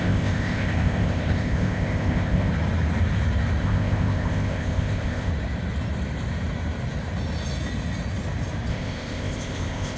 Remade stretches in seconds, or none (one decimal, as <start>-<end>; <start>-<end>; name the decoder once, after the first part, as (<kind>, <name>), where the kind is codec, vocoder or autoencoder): 0.0-2.5 (codec, ZipCodec); 3.6-5.3; 8.7-10.0